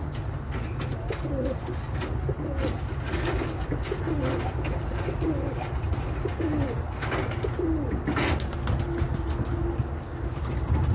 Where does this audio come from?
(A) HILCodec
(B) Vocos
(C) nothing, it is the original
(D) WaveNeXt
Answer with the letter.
C